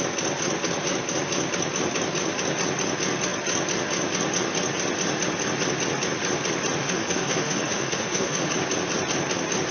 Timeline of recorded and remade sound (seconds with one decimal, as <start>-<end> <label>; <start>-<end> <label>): 0.0-6.8 recorded; 6.8-8.5 remade; 8.5-9.7 recorded